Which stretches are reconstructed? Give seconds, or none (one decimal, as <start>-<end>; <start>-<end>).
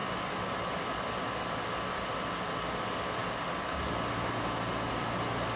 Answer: none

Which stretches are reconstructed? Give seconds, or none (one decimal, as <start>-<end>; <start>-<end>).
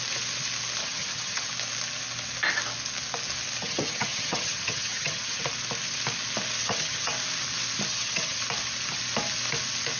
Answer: 0.8-1.5; 3.6-5.4; 6.6-7.1; 7.9-8.4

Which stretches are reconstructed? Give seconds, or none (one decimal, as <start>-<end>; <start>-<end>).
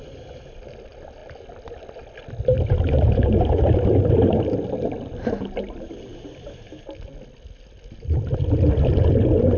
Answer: none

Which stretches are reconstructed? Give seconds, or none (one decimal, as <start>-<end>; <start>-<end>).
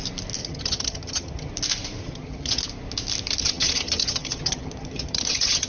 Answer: 0.4-1.5; 2.0-2.6; 3.4-5.7